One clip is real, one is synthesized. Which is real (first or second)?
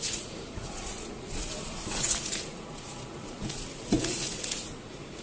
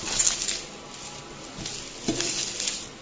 second